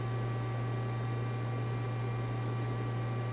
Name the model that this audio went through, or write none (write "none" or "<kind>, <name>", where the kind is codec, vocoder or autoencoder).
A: none